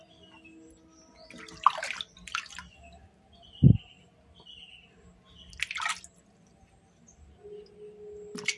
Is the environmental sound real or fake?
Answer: real